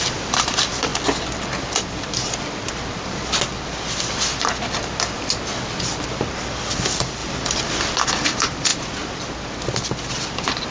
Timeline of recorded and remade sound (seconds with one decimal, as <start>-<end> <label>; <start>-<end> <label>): 0.0-0.9 remade; 0.9-5.8 recorded; 5.8-8.7 remade; 8.7-10.1 recorded; 10.1-10.7 remade